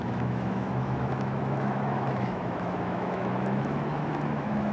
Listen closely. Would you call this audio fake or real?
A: fake